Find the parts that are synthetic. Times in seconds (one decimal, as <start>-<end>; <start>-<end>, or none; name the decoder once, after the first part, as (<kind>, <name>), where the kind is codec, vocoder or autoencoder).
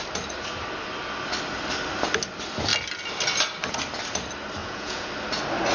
4.6-5.1 (vocoder, Vocos)